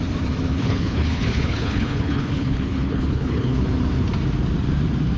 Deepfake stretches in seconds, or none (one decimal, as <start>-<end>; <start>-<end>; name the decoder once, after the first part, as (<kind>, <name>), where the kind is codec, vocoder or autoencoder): 0.5-3.6 (codec, HILCodec)